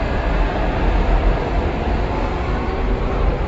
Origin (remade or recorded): remade